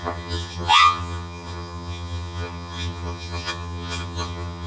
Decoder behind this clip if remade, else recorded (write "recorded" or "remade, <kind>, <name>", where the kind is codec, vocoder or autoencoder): remade, vocoder, HiFi-GAN